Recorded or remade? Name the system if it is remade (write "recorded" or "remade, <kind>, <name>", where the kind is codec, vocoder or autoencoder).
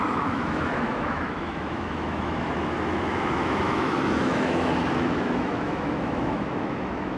remade, autoencoder, DAC-VAE